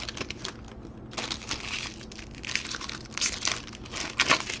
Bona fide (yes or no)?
yes